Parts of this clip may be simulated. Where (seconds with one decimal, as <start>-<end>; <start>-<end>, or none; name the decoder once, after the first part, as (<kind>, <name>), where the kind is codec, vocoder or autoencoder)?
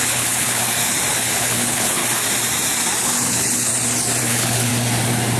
0.0-0.6 (codec, HILCodec); 1.1-2.0; 3.0-3.7; 4.2-4.7